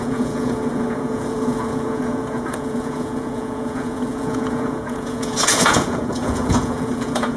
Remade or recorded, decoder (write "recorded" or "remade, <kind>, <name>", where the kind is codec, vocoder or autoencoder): remade, vocoder, Vocos